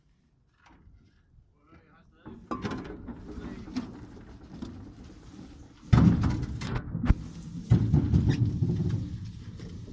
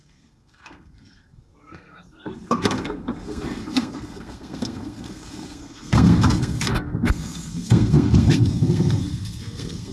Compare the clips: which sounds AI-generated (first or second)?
second